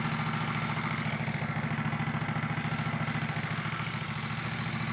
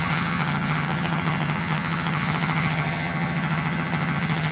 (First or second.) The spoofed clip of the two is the second